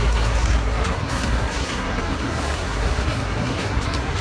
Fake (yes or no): yes